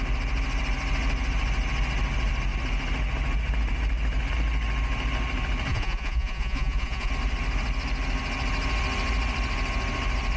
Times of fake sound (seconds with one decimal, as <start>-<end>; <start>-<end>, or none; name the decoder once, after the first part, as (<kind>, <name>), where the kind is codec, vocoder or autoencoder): 5.7-7.1 (vocoder, Vocos)